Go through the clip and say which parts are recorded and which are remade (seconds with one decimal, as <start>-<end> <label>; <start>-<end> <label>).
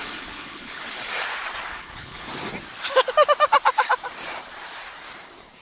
0.0-0.8 remade; 0.8-1.7 recorded; 1.7-2.3 remade; 2.3-5.6 recorded